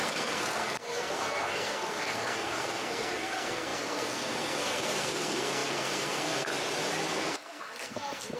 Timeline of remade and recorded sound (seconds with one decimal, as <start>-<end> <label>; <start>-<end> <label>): 0.0-6.5 remade; 6.5-7.1 recorded; 7.1-8.4 remade